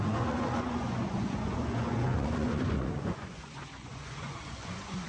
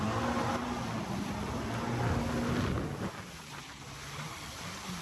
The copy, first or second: first